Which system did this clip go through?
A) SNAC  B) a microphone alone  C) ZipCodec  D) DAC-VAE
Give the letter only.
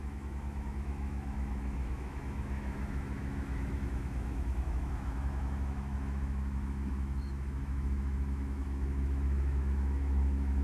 D